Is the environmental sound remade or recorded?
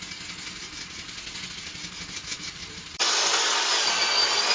recorded